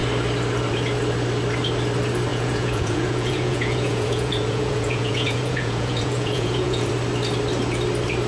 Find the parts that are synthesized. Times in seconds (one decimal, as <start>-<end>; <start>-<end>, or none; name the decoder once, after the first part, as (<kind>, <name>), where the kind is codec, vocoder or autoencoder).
2.3-6.9 (vocoder, Vocos)